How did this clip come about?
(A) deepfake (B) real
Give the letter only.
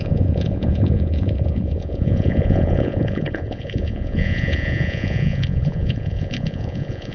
A